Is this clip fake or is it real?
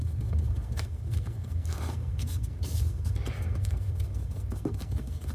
fake